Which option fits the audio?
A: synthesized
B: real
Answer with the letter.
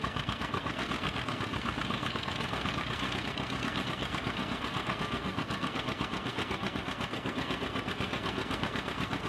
A